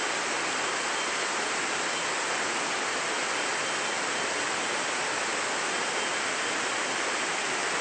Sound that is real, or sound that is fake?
real